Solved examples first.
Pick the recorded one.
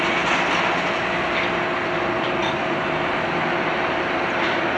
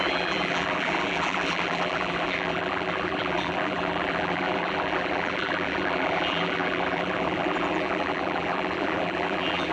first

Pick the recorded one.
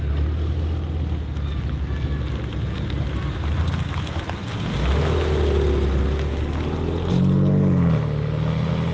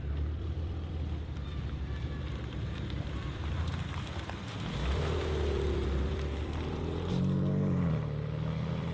first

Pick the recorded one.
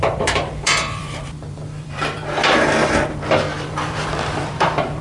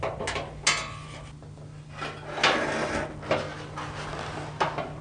second